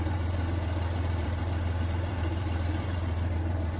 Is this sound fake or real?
fake